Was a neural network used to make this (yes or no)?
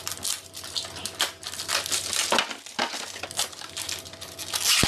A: no